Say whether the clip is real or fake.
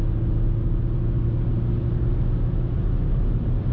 real